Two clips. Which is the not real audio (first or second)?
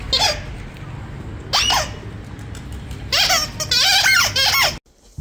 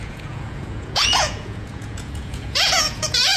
second